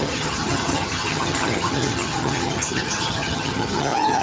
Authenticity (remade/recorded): remade